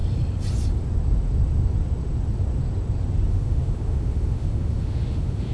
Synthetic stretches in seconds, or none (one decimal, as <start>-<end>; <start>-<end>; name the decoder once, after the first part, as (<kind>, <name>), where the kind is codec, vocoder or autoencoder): 3.3-5.5 (autoencoder, DAC-VAE)